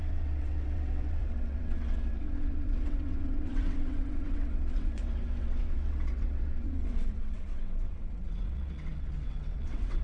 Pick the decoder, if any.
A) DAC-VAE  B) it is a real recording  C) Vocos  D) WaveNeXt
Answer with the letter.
D